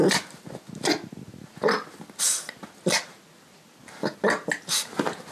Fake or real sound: real